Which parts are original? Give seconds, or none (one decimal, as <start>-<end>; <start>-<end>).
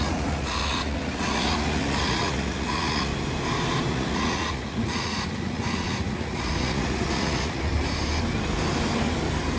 3.1-3.9; 7.7-9.6